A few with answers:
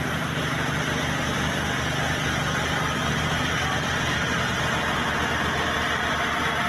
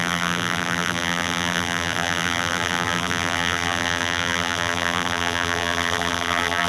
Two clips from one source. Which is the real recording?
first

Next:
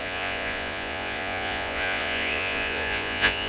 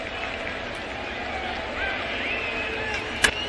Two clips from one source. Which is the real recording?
second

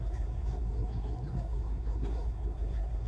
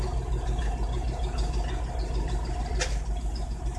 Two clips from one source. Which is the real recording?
second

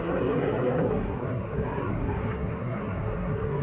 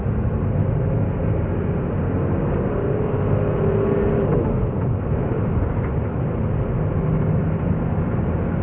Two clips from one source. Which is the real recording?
second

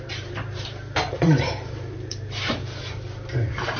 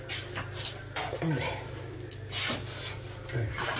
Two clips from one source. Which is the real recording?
second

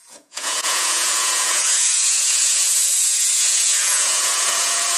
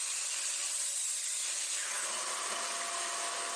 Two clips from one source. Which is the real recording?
second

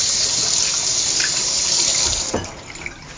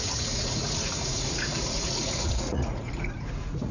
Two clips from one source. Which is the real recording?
first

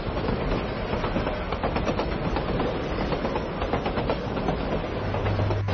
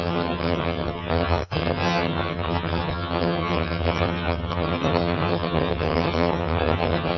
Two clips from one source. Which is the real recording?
first